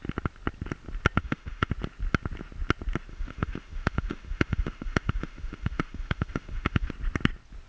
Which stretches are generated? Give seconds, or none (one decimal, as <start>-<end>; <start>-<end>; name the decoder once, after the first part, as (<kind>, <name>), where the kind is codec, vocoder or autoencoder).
1.2-1.7 (autoencoder, DAC-VAE); 3.1-6.9